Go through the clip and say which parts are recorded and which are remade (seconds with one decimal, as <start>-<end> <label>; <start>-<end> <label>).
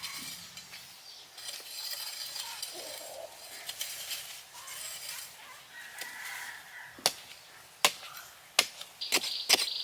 0.0-9.8 recorded